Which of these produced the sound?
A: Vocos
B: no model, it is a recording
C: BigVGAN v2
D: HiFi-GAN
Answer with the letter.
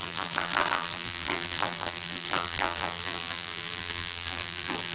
C